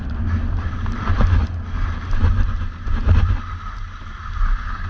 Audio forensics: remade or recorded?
recorded